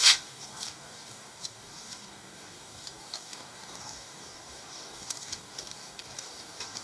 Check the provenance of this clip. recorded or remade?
remade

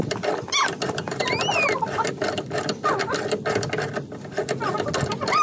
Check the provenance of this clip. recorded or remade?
recorded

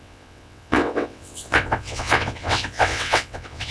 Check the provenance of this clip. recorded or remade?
remade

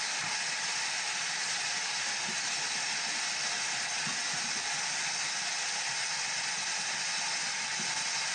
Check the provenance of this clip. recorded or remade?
recorded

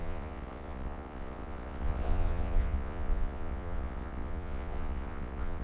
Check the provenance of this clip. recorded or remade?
remade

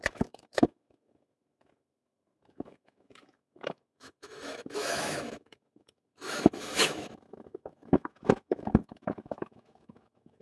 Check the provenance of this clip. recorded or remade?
remade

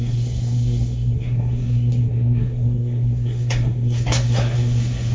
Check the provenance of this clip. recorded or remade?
remade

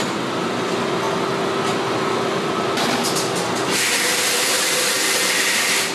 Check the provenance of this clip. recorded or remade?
recorded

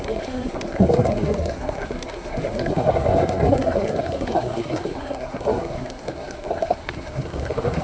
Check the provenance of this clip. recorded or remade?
remade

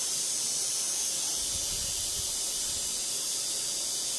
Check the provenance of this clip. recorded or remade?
remade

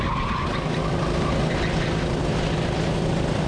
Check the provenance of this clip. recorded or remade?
recorded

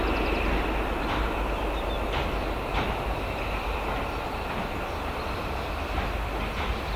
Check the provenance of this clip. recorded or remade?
recorded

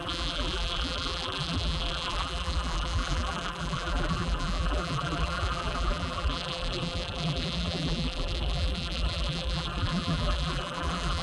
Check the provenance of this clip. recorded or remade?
remade